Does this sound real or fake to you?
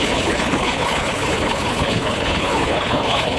fake